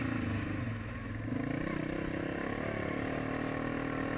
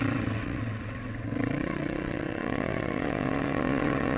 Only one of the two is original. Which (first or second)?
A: first